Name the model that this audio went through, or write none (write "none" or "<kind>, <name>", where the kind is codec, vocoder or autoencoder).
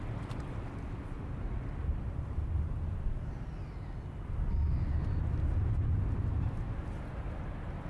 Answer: none